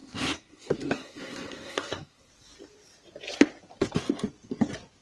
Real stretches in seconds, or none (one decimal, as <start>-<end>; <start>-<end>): 2.3-5.0